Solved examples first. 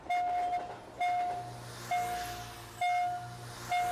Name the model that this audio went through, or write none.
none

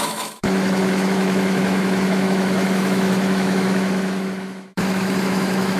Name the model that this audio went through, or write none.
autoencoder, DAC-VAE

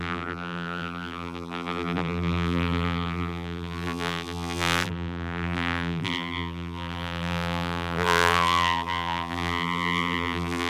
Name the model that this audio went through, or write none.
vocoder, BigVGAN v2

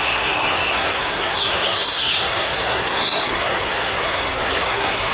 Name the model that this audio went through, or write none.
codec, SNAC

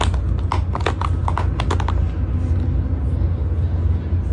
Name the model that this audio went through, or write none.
none